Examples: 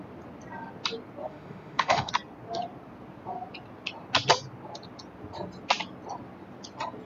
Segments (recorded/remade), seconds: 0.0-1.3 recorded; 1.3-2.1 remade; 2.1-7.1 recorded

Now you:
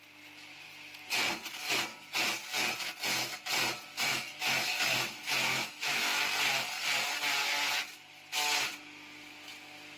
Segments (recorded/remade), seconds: 0.0-4.1 recorded; 4.1-6.2 remade; 6.2-10.0 recorded